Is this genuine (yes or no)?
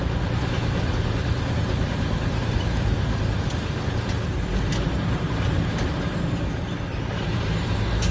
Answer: no